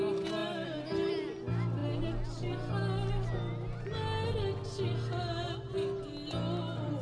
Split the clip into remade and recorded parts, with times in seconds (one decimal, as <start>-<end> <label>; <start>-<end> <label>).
0.0-7.0 recorded